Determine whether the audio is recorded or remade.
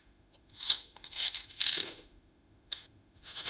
remade